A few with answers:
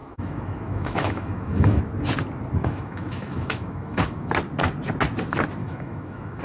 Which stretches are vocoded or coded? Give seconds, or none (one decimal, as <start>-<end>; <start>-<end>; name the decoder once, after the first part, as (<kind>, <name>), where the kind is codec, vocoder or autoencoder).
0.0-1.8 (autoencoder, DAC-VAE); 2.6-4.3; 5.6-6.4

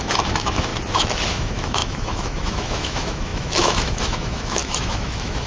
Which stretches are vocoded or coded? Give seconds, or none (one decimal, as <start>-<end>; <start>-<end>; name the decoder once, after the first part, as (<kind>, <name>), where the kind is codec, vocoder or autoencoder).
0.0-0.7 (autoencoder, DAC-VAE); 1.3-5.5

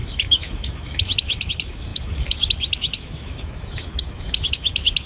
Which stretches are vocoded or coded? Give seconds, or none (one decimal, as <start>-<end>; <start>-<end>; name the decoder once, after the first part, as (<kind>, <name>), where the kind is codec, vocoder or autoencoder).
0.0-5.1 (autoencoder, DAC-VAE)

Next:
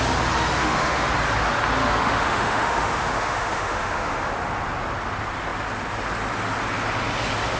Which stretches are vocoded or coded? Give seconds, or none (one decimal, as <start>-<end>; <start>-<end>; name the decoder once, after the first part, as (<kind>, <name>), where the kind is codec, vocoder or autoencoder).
0.6-1.1 (autoencoder, DAC-VAE); 1.8-4.3

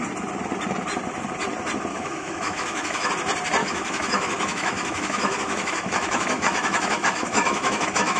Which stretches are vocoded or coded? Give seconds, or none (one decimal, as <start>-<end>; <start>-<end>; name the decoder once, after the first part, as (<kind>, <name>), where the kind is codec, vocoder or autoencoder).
1.9-3.1 (autoencoder, DAC-VAE); 3.6-8.2

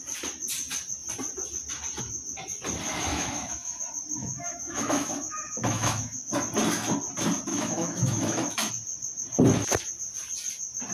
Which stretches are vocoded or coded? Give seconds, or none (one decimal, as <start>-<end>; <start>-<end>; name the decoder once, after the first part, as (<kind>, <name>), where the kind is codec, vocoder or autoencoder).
3.1-3.8 (autoencoder, DAC-VAE); 4.2-6.3; 7.5-8.7